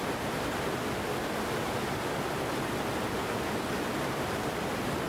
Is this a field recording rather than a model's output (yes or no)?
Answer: yes